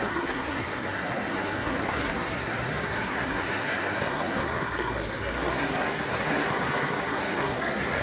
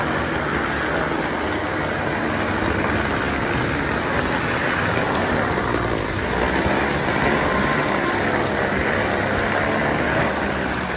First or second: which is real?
second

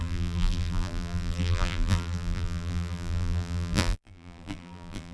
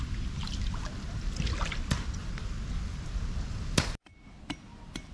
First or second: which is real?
second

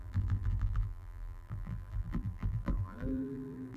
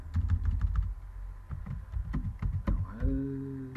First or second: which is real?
second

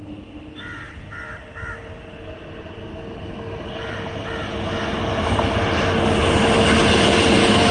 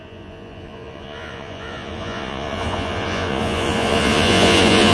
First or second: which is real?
first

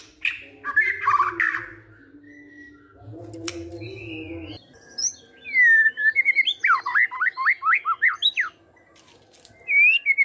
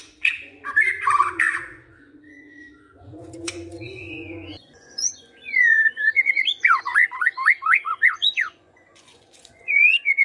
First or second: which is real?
first